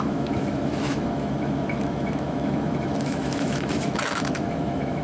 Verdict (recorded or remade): remade